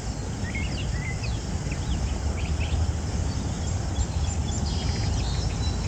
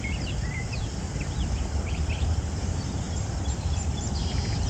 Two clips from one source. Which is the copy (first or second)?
second